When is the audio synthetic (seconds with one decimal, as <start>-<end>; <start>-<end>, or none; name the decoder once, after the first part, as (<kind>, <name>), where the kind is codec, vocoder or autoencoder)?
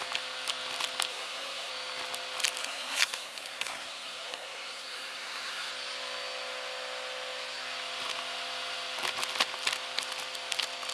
1.1-1.7 (codec, SNAC); 2.6-5.7